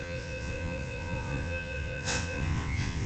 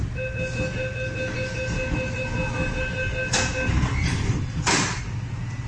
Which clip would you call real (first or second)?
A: second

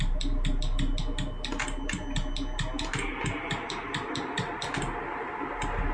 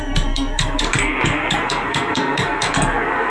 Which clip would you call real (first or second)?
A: first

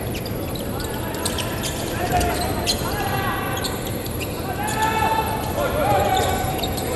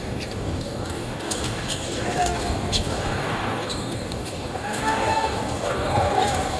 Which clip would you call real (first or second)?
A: first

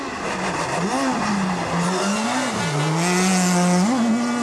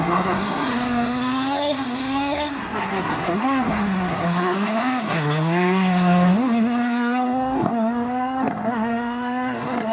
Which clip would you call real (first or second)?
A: first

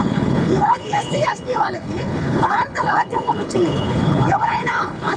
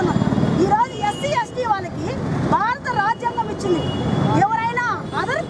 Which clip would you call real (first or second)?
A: second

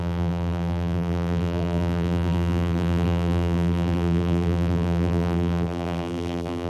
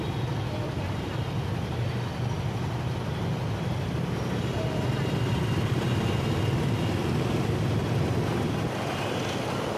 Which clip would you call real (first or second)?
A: second